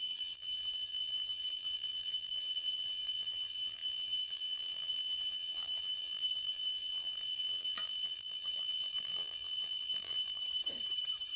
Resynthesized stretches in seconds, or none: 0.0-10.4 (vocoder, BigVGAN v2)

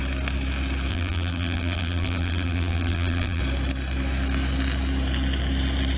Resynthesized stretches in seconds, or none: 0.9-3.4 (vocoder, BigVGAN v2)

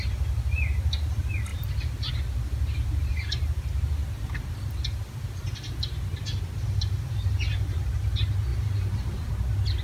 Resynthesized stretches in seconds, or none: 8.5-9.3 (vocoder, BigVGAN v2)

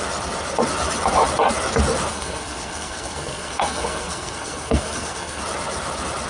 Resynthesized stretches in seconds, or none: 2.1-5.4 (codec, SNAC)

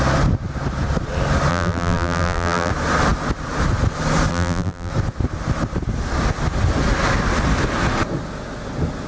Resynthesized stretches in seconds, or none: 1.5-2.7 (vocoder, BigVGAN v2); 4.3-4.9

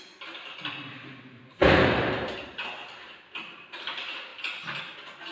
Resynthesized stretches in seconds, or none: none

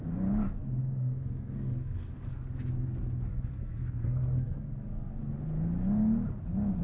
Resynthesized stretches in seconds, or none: 0.8-2.4 (codec, SNAC); 3.3-5.3